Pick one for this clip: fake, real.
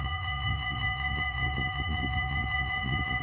fake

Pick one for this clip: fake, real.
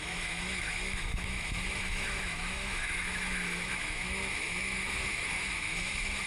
fake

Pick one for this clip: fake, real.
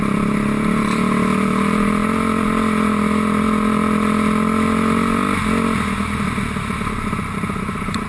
real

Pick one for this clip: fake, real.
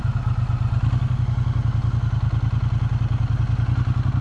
real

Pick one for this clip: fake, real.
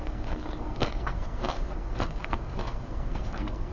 fake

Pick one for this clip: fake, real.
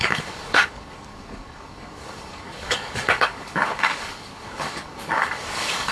fake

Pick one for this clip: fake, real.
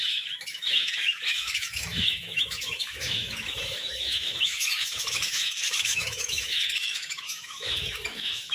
fake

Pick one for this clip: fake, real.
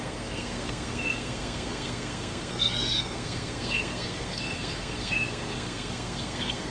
fake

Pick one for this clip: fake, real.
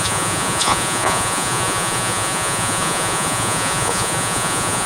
fake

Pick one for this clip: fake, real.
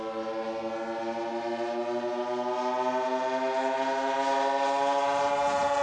real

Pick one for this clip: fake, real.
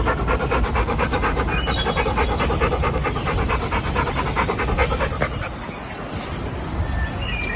real